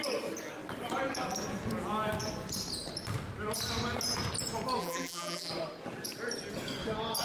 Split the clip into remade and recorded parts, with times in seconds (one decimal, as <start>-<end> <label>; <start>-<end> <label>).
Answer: 0.0-4.8 recorded; 4.8-5.5 remade; 5.5-7.2 recorded